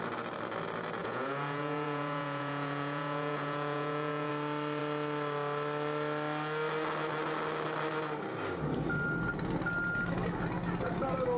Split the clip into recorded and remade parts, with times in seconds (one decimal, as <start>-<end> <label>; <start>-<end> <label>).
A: 0.0-1.0 recorded; 1.0-4.3 remade; 4.3-11.4 recorded